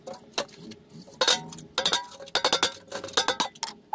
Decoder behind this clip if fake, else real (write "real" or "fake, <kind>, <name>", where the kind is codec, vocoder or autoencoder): real